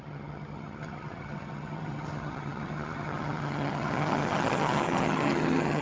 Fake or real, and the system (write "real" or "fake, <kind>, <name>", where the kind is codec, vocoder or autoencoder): fake, vocoder, HiFi-GAN